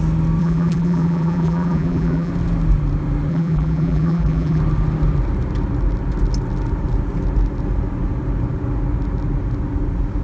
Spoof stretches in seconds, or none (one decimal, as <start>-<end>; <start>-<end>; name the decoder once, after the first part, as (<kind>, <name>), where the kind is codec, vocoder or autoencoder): 0.4-2.3 (vocoder, BigVGAN v2); 3.3-4.6